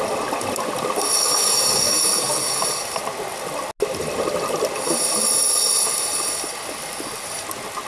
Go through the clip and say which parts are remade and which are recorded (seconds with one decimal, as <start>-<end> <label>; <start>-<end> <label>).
0.0-1.2 recorded; 1.2-2.6 remade; 2.6-7.9 recorded